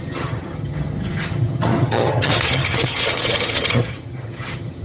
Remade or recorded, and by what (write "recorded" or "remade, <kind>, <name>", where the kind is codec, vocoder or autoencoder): remade, vocoder, HiFi-GAN